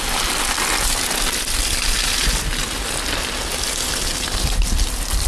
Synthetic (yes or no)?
no